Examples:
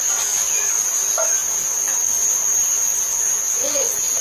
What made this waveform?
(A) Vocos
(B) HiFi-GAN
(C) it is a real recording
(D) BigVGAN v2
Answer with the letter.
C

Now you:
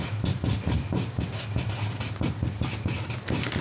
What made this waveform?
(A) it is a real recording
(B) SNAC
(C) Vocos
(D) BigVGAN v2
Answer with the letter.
A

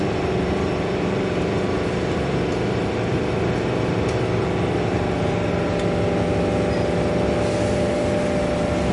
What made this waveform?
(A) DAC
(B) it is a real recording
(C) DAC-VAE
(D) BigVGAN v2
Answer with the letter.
B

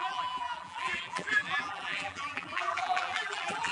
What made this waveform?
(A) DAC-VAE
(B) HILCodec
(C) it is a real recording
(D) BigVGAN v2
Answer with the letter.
D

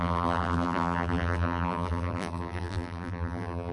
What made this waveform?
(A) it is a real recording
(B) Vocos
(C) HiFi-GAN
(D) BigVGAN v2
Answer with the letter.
D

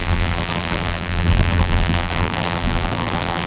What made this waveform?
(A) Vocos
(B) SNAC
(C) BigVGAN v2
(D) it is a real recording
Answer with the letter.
C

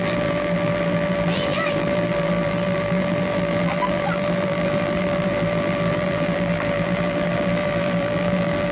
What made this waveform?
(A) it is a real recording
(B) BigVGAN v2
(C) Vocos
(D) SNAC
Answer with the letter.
B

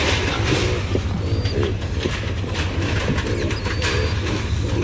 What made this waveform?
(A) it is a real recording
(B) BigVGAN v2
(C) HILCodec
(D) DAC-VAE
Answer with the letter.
A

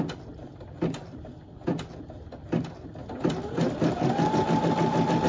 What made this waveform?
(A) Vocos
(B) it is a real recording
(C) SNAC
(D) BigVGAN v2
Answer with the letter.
B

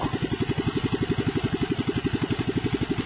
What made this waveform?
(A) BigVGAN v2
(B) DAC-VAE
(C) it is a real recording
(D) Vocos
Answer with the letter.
A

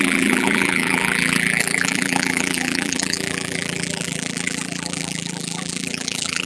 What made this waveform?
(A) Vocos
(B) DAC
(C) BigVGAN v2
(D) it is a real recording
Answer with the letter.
C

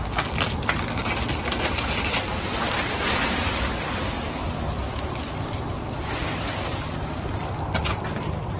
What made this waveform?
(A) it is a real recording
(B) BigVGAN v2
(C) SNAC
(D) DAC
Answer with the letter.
A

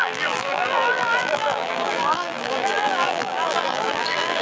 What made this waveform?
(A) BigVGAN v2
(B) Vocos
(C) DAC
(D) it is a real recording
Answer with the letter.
A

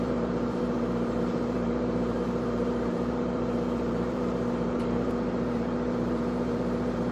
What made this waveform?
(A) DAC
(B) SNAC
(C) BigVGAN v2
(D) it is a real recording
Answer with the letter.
C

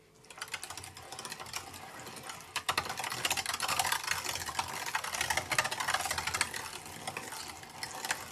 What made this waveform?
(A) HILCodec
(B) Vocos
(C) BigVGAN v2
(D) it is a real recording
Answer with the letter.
D